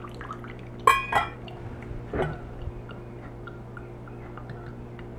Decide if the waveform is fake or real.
real